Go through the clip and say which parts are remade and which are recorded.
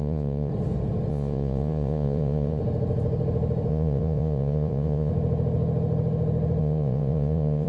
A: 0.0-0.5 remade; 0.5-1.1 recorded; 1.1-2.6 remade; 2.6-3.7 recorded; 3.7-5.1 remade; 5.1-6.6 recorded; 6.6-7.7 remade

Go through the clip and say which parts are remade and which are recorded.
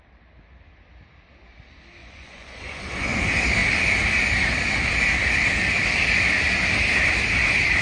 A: 0.0-2.0 recorded; 2.0-3.2 remade; 3.2-7.8 recorded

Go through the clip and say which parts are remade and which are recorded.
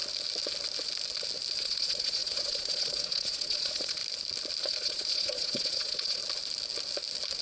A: 0.0-1.6 recorded; 1.6-4.0 remade; 4.0-4.6 recorded; 4.6-6.2 remade; 6.2-7.4 recorded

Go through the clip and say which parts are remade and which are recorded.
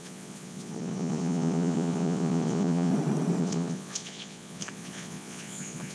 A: 0.0-2.9 remade; 2.9-3.4 recorded; 3.4-5.9 remade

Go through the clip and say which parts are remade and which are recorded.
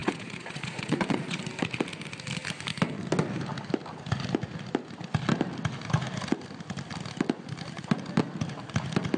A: 0.0-1.4 remade; 1.4-9.2 recorded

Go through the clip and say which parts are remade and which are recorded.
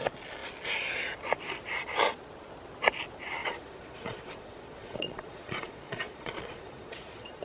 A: 0.0-3.4 recorded; 3.4-7.4 remade